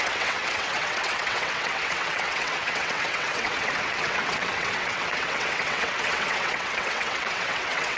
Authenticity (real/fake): fake